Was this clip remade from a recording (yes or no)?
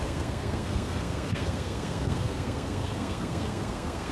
yes